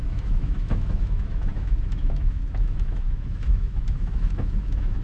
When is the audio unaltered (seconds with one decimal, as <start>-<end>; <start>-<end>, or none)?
none